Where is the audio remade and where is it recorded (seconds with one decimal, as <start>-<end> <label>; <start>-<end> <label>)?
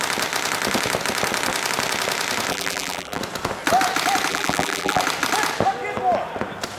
0.0-2.5 recorded; 2.5-3.2 remade; 3.2-4.3 recorded; 4.3-5.0 remade; 5.0-6.8 recorded